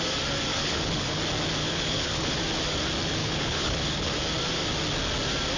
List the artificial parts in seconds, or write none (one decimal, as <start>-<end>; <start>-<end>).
0.5-1.2; 1.6-2.4; 3.2-4.2